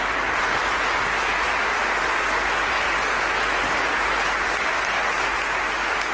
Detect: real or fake real